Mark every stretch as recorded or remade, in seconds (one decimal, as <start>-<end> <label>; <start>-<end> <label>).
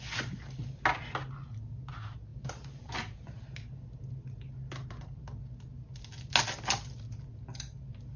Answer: 0.0-2.3 recorded; 2.3-3.4 remade; 3.4-8.2 recorded